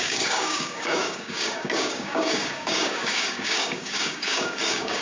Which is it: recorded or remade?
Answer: remade